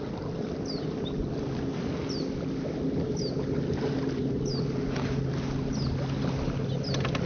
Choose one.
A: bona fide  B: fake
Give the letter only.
A